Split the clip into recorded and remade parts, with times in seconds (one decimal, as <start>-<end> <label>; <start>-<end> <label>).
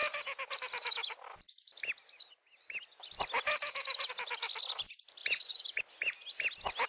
0.0-6.9 recorded